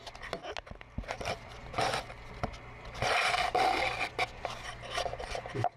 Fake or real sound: real